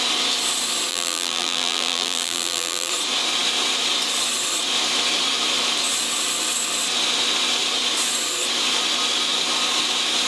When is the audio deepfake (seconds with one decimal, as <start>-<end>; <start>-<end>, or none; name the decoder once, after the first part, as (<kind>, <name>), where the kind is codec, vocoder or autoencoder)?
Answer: 0.9-2.9 (vocoder, BigVGAN v2)